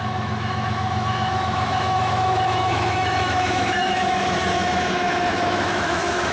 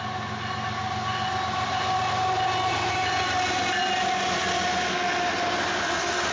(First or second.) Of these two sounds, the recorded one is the second